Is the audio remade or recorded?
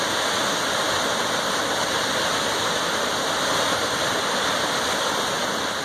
recorded